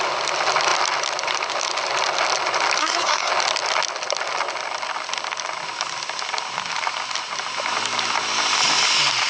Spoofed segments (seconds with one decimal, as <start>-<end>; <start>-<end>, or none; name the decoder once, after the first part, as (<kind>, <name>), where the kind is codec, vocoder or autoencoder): 2.8-3.3 (codec, SNAC)